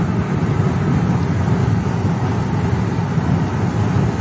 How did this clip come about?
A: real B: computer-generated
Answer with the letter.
A